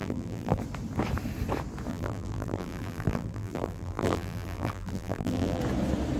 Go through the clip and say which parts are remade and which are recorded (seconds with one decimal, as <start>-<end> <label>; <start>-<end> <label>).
0.0-0.6 remade; 0.6-1.9 recorded; 1.9-5.6 remade; 5.6-6.2 recorded